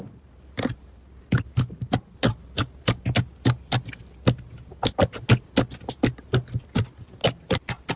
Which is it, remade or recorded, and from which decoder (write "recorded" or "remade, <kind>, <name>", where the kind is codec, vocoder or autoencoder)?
recorded